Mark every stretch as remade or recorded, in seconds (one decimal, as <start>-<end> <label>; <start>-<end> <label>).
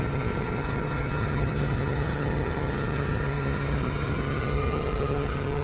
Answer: 0.0-5.6 remade